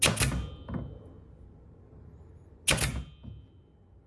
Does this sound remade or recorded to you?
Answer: recorded